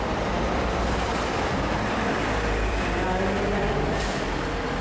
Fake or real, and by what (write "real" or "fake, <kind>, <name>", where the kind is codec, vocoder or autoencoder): fake, vocoder, BigVGAN v2